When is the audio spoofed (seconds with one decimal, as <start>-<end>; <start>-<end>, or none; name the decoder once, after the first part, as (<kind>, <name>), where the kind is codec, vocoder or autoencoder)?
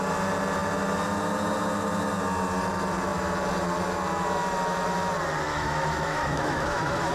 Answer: 5.5-7.1 (autoencoder, DAC-VAE)